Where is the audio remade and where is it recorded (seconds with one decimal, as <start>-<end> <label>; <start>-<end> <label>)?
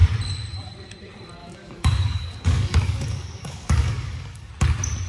0.0-1.4 recorded; 1.4-4.5 remade; 4.5-5.1 recorded